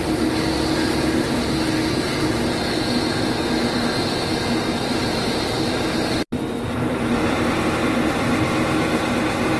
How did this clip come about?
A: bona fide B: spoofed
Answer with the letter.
A